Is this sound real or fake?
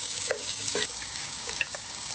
fake